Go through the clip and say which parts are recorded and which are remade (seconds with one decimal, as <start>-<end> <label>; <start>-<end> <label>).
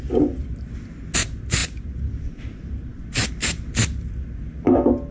0.0-5.1 recorded